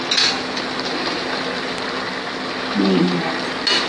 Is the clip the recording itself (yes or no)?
yes